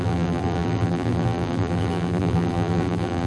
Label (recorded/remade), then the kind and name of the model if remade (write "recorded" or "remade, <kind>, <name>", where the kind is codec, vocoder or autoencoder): remade, vocoder, BigVGAN v2